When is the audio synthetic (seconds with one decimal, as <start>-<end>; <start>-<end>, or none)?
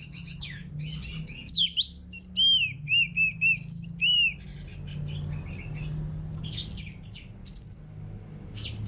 0.0-0.7